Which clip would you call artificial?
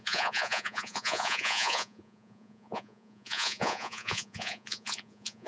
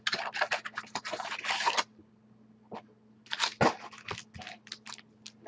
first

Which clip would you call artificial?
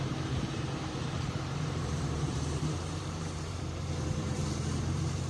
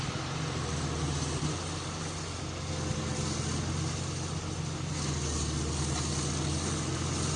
first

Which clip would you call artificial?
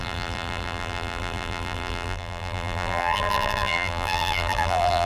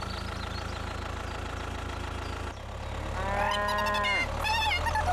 first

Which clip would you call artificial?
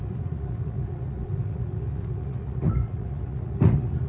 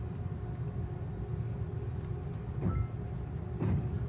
first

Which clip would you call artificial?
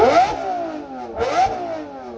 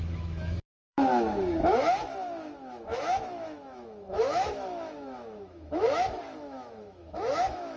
second